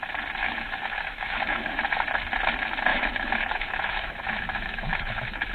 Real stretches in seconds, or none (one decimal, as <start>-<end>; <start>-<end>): 0.0-0.4; 1.8-2.9